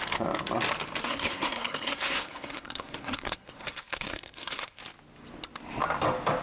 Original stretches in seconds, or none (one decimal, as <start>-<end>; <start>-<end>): 0.0-1.0; 4.8-6.4